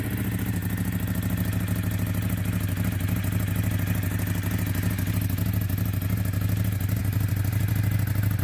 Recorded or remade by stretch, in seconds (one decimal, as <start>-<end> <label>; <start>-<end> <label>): 0.0-7.0 recorded; 7.0-7.7 remade; 7.7-8.4 recorded